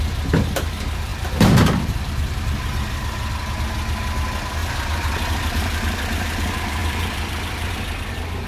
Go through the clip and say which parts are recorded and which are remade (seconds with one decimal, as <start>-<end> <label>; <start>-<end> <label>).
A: 0.0-1.1 recorded; 1.1-3.3 remade; 3.3-6.8 recorded; 6.8-7.7 remade; 7.7-8.5 recorded